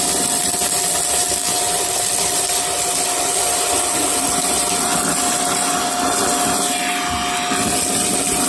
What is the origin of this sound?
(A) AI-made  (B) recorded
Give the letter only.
B